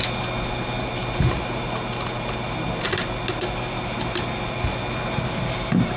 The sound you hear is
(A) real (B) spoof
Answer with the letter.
A